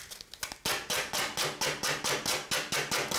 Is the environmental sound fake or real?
real